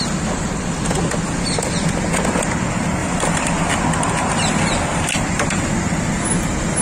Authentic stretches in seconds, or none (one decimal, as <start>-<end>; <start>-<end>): 0.0-3.0; 5.7-6.8